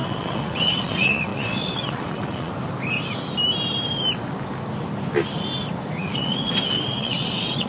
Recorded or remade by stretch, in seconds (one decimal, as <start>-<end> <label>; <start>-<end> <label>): 0.0-2.5 remade; 2.5-6.0 recorded; 6.0-7.7 remade